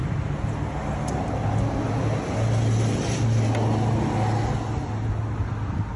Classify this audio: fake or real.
real